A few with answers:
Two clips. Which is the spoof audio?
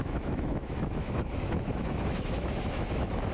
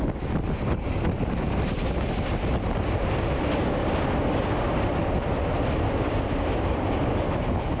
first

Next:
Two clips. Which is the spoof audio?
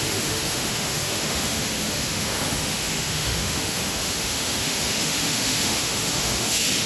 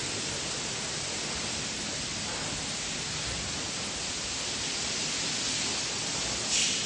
first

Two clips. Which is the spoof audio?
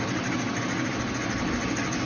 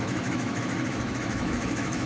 second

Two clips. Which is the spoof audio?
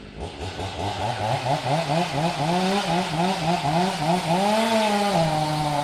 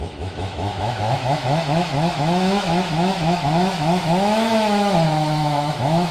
second